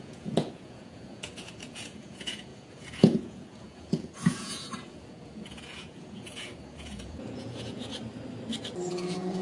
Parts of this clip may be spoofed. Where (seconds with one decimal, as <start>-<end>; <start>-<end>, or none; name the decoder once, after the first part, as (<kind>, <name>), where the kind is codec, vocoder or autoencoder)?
0.0-7.9 (vocoder, Vocos); 8.9-9.4